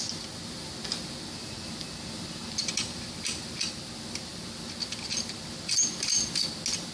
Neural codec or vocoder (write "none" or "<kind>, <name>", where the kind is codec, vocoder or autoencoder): none